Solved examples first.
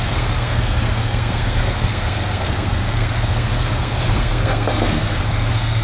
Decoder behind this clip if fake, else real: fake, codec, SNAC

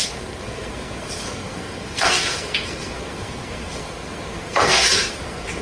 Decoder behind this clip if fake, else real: fake, codec, SNAC